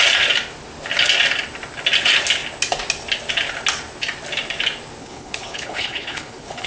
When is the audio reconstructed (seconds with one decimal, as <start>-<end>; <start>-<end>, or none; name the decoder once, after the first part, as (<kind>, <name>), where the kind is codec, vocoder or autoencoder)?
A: 5.0-6.7 (codec, HILCodec)